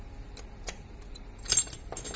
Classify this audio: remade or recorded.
recorded